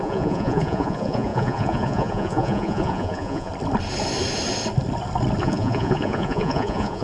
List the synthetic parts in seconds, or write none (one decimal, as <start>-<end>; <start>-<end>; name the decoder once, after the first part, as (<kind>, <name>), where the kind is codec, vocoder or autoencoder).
0.0-3.5 (vocoder, Vocos); 5.4-7.0